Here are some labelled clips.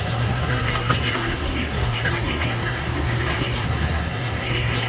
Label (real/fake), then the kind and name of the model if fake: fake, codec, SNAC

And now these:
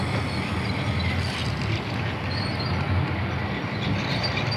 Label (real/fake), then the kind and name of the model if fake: real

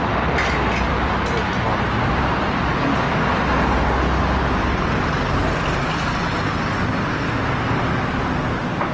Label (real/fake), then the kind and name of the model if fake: real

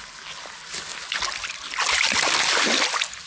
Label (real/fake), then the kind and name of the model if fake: real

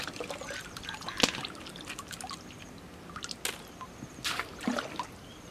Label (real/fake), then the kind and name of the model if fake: real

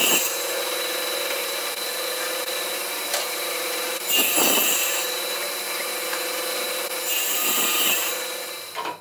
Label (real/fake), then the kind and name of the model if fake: fake, vocoder, BigVGAN v2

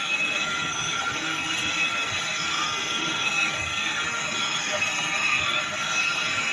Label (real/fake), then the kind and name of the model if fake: fake, codec, SNAC